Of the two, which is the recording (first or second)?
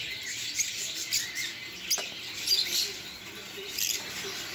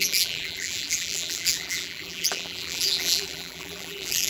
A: first